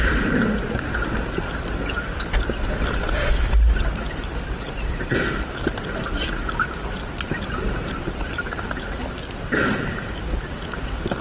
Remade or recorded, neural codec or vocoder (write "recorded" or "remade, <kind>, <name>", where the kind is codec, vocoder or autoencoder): remade, vocoder, BigVGAN v2